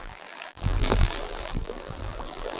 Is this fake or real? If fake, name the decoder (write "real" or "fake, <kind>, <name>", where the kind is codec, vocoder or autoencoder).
fake, vocoder, BigVGAN v2